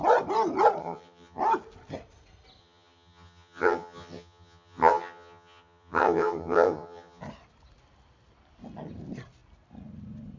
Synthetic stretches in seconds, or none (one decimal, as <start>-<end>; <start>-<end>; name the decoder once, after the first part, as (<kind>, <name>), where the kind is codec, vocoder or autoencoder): 0.8-1.4 (vocoder, HiFi-GAN); 2.6-7.2